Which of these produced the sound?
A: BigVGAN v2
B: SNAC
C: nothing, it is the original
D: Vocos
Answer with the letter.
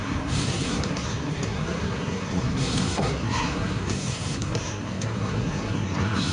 B